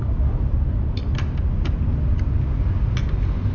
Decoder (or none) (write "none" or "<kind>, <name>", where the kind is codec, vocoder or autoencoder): none